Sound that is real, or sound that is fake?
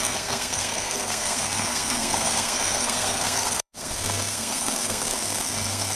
fake